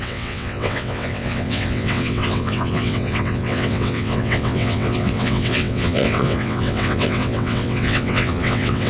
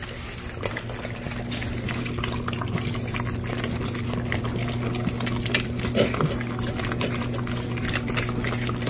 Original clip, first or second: second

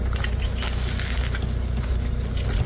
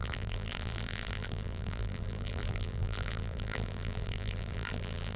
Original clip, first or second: first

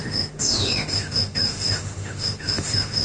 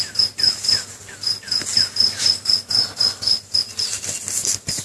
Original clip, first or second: second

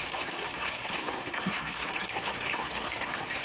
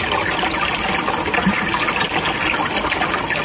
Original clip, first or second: second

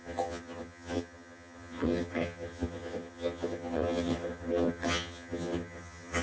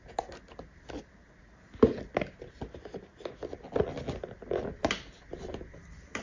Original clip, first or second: second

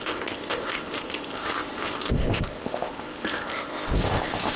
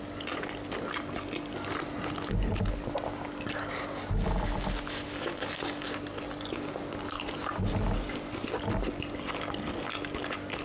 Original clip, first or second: second